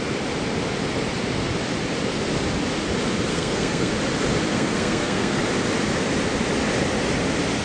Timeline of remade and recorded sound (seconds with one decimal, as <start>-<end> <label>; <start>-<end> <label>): 0.0-3.3 recorded; 3.3-3.9 remade; 3.9-4.5 recorded; 4.5-5.4 remade; 5.4-7.6 recorded